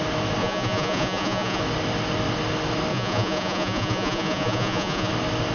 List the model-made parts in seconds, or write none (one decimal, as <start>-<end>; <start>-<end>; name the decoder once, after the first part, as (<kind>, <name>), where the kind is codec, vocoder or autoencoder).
0.4-1.6 (vocoder, Vocos); 2.9-5.1